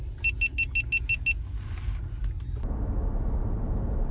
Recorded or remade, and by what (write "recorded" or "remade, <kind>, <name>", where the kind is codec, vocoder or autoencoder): recorded